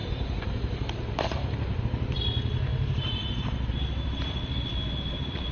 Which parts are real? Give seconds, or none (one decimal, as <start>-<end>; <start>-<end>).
1.8-2.7; 3.7-5.5